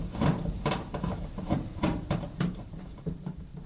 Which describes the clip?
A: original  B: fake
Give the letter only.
B